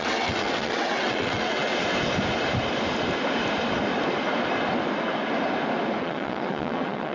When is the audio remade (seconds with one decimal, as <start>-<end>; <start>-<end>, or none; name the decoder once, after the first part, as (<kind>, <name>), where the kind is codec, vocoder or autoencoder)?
0.0-1.7 (vocoder, WaveNeXt); 6.0-7.1